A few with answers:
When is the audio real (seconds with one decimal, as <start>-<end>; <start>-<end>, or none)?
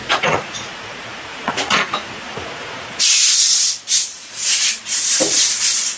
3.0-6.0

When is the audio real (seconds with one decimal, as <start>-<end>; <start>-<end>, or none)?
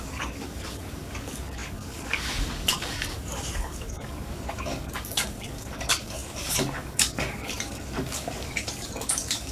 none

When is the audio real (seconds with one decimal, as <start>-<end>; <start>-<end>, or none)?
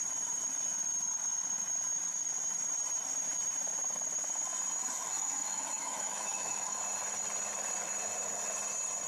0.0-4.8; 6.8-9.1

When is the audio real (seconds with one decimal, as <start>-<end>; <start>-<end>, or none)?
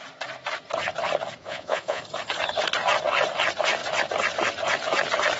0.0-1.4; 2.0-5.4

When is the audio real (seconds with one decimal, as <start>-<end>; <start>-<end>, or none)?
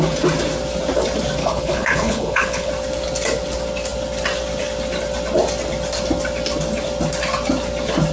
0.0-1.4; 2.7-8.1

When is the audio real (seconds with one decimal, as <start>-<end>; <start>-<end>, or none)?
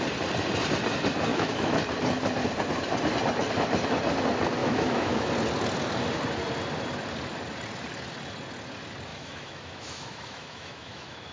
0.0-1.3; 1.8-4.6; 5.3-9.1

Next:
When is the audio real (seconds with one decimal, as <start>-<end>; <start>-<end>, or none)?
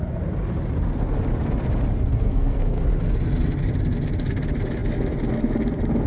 0.0-2.1; 2.8-6.1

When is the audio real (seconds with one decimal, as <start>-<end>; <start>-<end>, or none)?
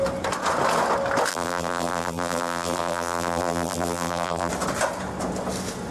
0.0-1.3; 4.5-5.9